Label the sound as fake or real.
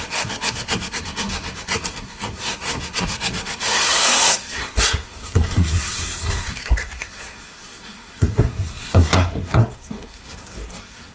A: fake